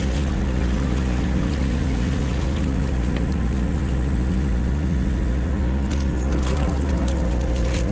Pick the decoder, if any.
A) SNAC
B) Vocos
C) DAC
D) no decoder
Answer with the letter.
B